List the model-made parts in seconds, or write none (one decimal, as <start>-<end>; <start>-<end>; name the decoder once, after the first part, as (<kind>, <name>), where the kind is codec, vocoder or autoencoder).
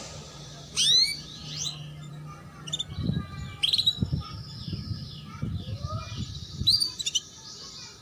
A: 2.9-7.3 (vocoder, BigVGAN v2)